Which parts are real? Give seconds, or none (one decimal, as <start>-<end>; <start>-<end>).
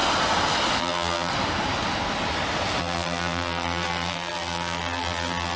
0.0-0.8; 1.3-2.8